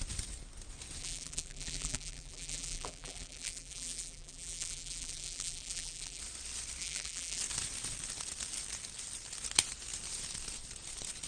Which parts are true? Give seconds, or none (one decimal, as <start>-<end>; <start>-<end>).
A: 0.0-1.0; 6.2-6.8; 7.4-11.3

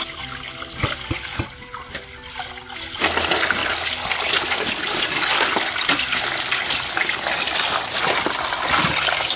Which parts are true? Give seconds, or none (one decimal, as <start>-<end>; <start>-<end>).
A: 0.0-9.4

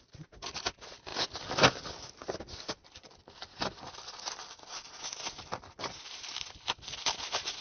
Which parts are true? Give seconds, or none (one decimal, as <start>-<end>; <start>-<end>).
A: 0.0-7.6

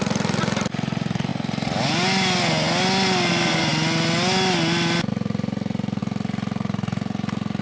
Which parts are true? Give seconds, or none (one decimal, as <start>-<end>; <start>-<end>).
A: 1.3-3.3; 3.7-5.1

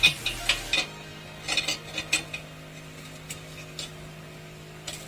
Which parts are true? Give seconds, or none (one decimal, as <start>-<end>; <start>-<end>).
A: 0.0-5.1